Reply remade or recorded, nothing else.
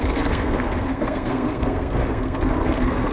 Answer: remade